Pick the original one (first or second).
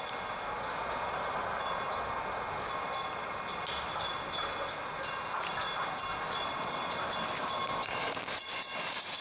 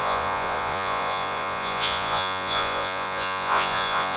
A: first